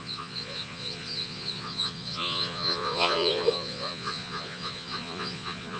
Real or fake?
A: fake